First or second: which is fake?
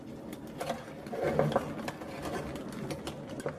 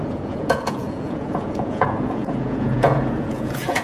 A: second